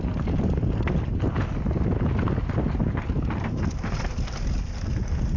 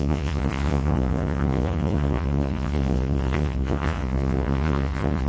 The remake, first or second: second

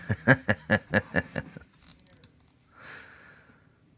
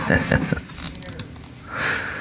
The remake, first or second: first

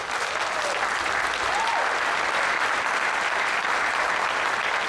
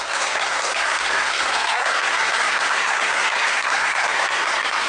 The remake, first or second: second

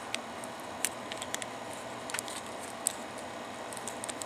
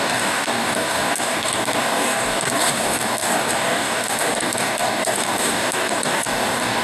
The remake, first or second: second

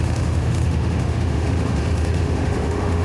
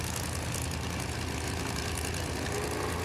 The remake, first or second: first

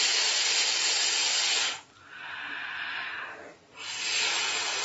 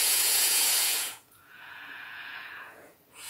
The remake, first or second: second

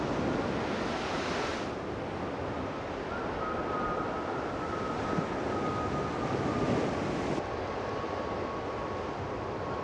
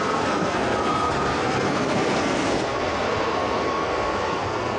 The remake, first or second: second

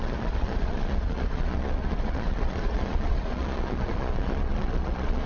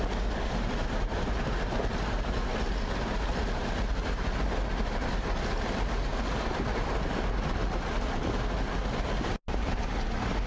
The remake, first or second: first